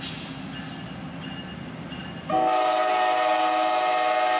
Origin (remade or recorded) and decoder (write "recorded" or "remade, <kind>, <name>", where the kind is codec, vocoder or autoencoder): recorded